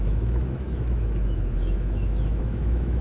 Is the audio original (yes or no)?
no